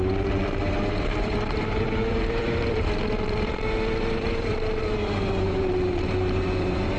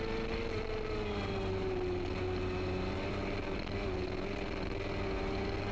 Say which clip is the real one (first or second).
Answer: second